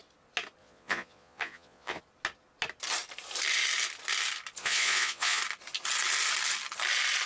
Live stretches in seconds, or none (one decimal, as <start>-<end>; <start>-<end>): 0.0-0.6; 2.0-4.6; 5.4-7.3